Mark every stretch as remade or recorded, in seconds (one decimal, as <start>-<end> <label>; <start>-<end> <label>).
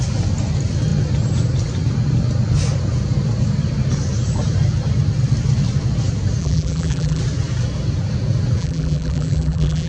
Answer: 0.0-6.4 recorded; 6.4-7.2 remade; 7.2-8.6 recorded; 8.6-9.9 remade